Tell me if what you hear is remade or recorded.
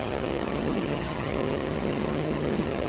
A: remade